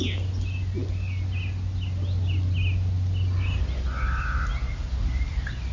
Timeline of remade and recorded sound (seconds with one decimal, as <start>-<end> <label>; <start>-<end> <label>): 0.0-5.7 recorded